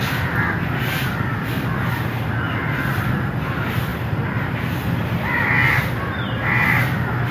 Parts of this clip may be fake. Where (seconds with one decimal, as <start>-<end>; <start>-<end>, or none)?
none